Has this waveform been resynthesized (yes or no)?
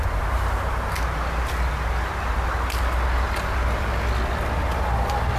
no